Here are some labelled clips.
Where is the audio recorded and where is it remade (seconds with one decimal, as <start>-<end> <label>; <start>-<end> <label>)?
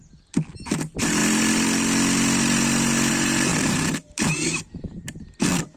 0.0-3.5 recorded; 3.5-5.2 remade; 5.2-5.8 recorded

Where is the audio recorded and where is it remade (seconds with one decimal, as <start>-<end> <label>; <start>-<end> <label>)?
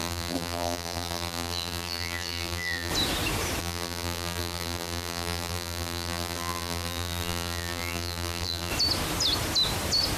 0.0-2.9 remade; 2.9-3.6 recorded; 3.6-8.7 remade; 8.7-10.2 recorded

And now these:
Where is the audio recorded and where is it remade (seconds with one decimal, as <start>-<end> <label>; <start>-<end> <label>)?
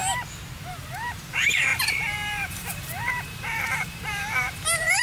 0.0-0.7 recorded; 0.7-5.0 remade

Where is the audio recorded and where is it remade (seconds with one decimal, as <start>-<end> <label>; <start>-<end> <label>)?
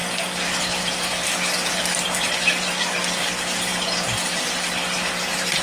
0.0-5.6 recorded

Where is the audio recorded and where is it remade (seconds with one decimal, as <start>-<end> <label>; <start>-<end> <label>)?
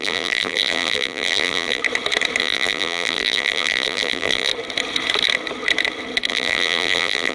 0.0-1.8 remade; 1.8-2.4 recorded; 2.4-4.5 remade; 4.5-6.3 recorded; 6.3-7.3 remade